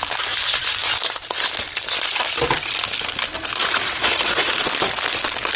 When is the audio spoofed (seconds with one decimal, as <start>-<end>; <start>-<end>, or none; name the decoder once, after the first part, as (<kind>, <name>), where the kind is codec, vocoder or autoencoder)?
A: 3.6-4.6 (vocoder, Vocos)